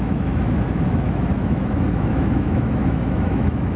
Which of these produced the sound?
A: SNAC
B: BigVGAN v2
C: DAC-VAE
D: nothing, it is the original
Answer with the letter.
C